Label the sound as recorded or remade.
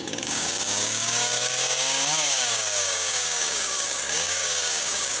remade